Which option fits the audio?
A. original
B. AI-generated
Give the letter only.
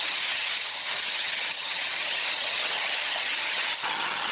B